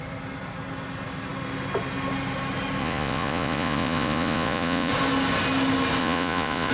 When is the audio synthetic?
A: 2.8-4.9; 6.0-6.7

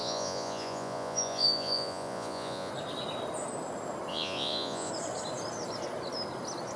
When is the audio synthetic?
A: 0.0-2.7; 4.1-4.9

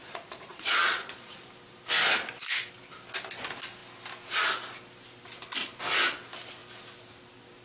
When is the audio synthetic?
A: 0.0-1.4

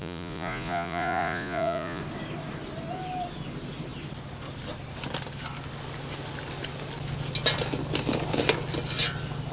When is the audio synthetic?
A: 0.0-2.0

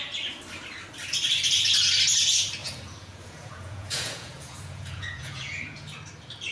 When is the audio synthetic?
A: 2.6-5.9